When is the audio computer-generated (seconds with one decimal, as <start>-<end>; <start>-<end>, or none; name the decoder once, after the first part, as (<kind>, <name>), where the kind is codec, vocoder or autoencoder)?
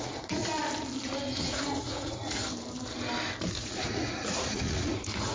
0.0-0.4 (vocoder, Vocos); 1.4-2.4; 3.5-5.3